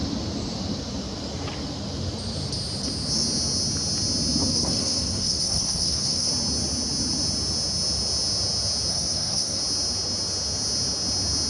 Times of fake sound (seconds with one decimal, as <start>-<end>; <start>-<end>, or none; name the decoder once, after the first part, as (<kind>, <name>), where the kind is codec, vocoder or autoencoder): 4.5-6.3 (codec, SNAC); 8.9-9.6